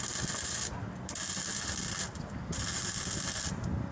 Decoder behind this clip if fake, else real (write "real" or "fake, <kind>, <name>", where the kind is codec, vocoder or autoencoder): real